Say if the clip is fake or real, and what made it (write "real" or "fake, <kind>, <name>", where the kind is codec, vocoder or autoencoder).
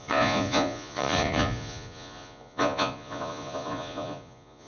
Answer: fake, vocoder, Vocos